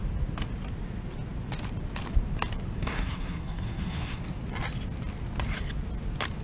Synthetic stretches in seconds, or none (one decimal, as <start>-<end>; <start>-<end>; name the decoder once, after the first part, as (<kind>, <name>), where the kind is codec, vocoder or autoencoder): 2.8-4.2 (codec, SNAC)